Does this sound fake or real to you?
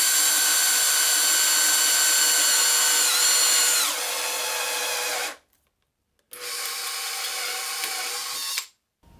real